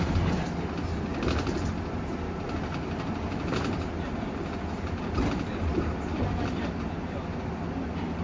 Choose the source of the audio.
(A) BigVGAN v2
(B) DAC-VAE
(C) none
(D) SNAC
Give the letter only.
C